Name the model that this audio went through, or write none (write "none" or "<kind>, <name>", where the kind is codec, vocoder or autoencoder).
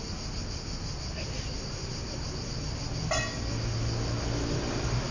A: none